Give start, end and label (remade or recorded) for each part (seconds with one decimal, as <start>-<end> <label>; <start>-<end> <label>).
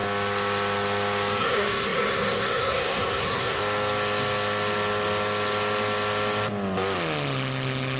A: 0.0-1.4 recorded; 1.4-3.6 remade; 3.6-8.0 recorded